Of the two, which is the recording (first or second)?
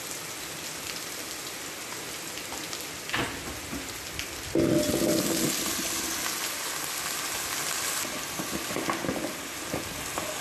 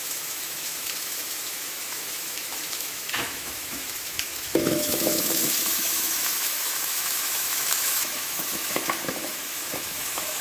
first